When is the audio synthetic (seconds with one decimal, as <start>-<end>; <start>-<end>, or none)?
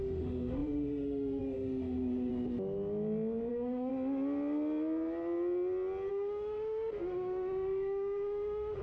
0.0-2.3; 3.5-3.9; 6.1-8.8